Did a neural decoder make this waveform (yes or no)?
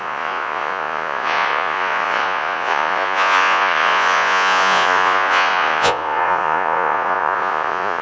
yes